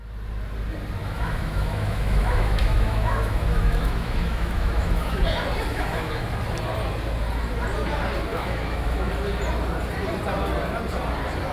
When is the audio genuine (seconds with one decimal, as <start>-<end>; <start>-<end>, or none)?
0.0-1.0; 5.2-5.7; 6.3-8.3; 9.1-11.5